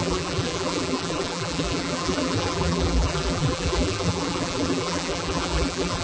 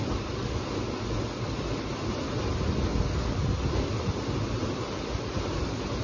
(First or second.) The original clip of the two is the second